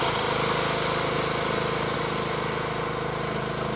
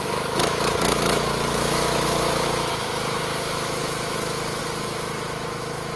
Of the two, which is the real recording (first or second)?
first